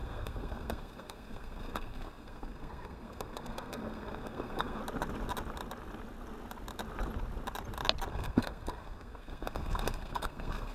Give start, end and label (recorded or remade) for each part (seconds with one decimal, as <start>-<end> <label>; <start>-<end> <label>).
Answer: 0.0-4.8 remade; 4.8-8.1 recorded; 8.1-10.7 remade